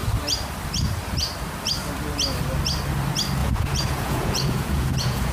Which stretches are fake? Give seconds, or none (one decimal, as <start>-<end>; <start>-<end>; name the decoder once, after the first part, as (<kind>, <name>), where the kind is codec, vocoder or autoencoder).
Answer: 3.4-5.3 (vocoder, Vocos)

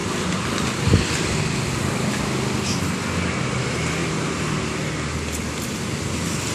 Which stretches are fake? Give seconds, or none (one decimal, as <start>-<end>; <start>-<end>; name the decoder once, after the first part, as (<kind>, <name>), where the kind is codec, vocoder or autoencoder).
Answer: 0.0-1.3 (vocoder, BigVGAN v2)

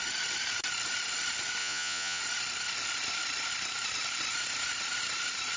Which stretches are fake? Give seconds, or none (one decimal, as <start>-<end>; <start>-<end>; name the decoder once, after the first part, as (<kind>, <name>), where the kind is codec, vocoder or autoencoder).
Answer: 1.6-2.2 (vocoder, Vocos)

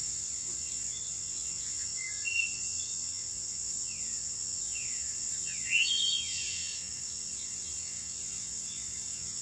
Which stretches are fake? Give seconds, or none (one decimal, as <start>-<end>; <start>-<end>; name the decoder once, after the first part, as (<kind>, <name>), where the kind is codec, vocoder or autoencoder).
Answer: 0.0-9.4 (vocoder, WaveNeXt)

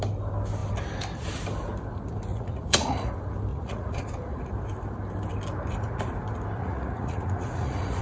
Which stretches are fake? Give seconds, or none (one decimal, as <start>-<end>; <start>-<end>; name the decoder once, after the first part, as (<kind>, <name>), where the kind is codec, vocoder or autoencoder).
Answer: 2.3-3.1 (vocoder, Vocos); 3.5-4.5; 6.6-8.0

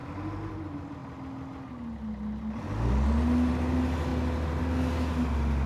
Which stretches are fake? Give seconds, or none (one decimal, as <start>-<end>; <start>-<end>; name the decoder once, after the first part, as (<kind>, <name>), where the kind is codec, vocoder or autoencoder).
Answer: none